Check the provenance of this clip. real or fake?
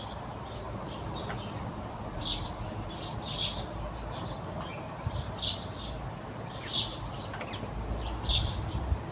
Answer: real